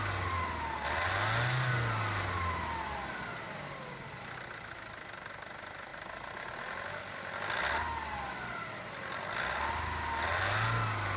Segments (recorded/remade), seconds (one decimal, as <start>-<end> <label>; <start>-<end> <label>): 0.0-11.2 recorded